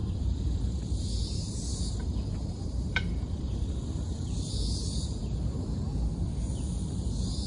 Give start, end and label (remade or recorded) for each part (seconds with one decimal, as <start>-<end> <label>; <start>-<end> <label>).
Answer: 0.0-4.5 remade; 4.5-7.5 recorded